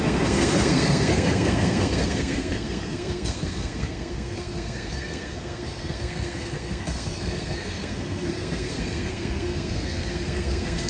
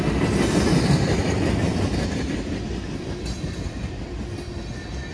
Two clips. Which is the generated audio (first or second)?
first